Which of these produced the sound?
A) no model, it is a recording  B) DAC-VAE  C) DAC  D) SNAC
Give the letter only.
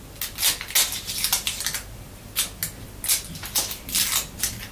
A